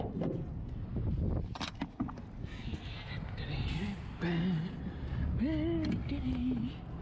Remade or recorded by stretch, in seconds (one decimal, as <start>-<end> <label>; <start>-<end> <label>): 0.0-2.4 recorded; 2.4-3.1 remade; 3.1-7.0 recorded